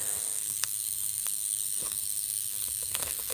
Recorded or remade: remade